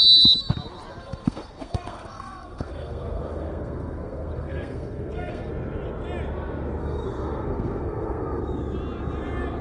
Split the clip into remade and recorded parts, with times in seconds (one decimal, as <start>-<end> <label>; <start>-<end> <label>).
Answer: 0.0-1.0 recorded; 1.0-5.5 remade; 5.5-6.8 recorded; 6.8-8.4 remade; 8.4-9.6 recorded